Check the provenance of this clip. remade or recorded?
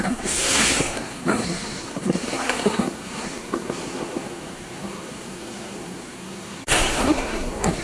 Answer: remade